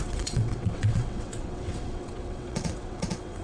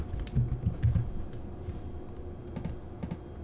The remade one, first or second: first